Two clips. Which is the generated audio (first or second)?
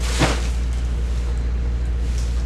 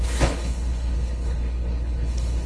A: second